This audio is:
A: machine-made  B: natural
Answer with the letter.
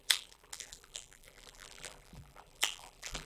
A